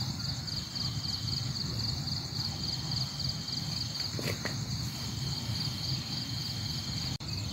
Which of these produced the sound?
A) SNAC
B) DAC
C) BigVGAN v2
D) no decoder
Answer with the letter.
D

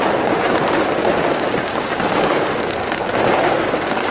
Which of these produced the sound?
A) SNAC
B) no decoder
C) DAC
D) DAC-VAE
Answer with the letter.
C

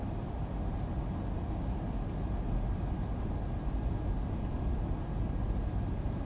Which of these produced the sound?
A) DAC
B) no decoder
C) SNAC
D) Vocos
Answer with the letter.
B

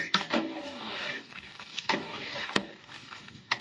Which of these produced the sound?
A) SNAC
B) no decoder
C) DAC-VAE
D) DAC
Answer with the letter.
D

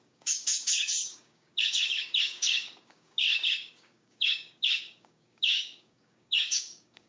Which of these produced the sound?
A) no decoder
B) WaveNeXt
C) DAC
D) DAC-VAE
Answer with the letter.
C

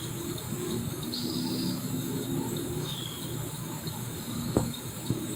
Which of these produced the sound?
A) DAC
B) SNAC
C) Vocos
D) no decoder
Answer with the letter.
A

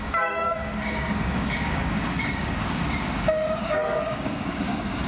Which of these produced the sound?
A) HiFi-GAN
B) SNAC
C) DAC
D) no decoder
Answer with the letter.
C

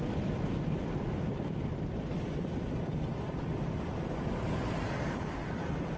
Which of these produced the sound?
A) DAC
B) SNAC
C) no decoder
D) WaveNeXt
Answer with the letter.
C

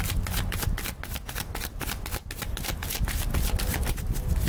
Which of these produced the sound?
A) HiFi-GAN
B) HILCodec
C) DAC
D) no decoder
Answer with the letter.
D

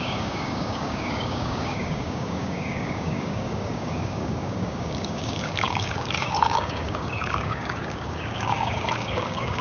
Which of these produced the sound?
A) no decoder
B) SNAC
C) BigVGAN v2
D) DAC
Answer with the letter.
D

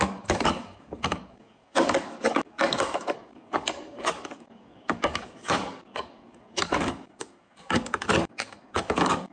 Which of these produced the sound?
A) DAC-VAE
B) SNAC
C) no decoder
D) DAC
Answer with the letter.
D